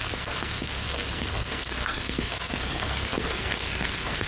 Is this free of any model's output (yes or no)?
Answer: no